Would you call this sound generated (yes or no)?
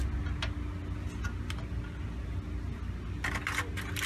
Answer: no